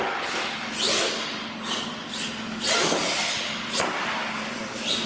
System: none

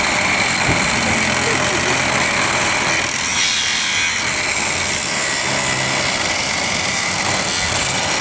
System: none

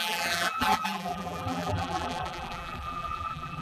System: vocoder, BigVGAN v2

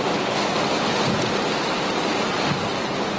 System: none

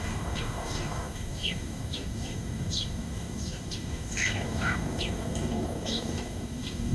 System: codec, DAC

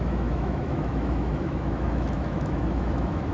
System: autoencoder, DAC-VAE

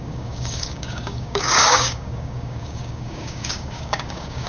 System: codec, DAC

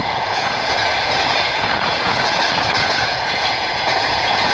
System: vocoder, Vocos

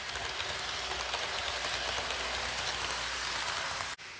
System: none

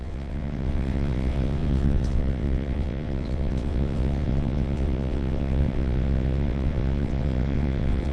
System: vocoder, WaveNeXt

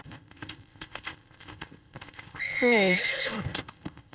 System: codec, ZipCodec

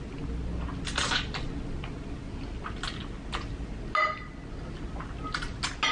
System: none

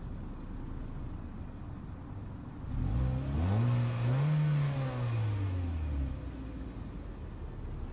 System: none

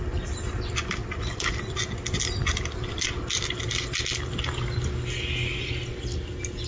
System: none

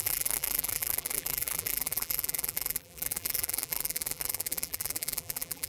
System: vocoder, BigVGAN v2